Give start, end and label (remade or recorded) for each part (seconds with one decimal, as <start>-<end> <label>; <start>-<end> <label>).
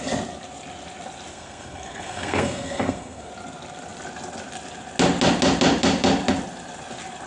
0.0-1.3 recorded; 1.3-3.3 remade; 3.3-7.3 recorded